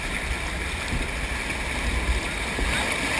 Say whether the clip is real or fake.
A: real